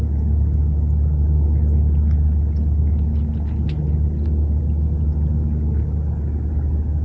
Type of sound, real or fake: real